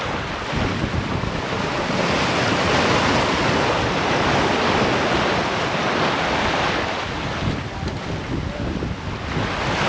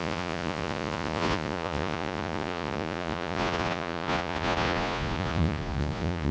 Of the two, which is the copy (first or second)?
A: second